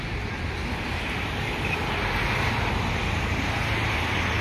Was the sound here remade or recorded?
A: recorded